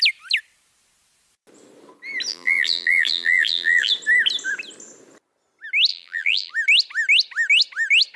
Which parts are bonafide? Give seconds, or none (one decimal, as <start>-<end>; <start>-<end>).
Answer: 0.0-2.3; 3.9-5.9; 6.5-8.2